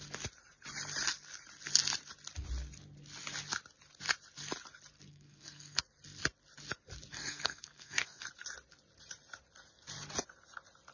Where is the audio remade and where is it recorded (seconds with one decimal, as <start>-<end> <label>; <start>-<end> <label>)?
0.0-5.1 recorded; 5.1-5.8 remade; 5.8-7.1 recorded; 7.1-8.2 remade; 8.2-10.9 recorded